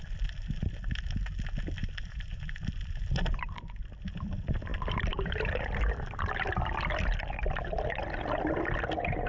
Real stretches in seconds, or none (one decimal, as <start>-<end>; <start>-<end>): 0.0-1.8; 3.0-4.7; 5.9-9.3